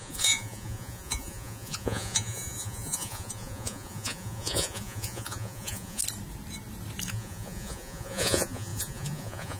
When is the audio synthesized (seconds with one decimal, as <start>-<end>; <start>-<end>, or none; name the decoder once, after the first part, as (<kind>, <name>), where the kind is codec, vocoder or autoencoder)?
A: 0.0-6.0 (vocoder, Vocos); 7.1-9.6